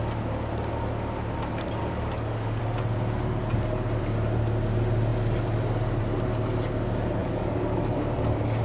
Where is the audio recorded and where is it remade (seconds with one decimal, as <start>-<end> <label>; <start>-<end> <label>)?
0.0-1.8 recorded; 1.8-2.6 remade; 2.6-7.2 recorded; 7.2-8.6 remade